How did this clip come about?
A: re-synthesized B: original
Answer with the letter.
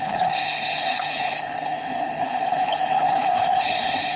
A